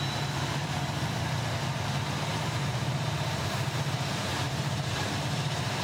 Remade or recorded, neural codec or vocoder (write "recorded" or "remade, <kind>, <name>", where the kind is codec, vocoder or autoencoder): remade, vocoder, BigVGAN v2